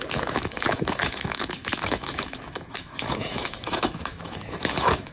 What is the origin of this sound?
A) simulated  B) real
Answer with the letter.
A